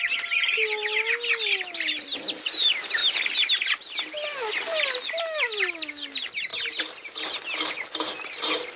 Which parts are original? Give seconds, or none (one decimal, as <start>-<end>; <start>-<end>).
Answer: 0.0-8.8